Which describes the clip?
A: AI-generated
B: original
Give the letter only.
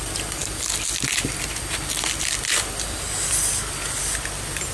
B